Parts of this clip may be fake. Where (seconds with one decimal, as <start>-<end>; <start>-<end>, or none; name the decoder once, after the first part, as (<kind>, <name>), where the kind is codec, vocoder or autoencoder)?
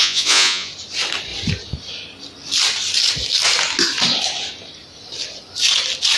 0.0-0.7 (vocoder, Vocos)